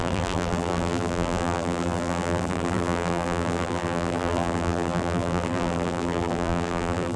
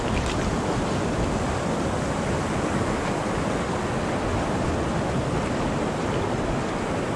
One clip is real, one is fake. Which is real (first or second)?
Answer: second